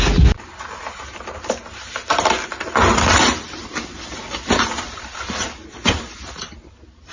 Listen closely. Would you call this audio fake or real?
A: real